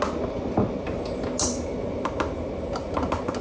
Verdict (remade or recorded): recorded